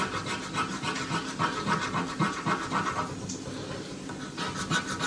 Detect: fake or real real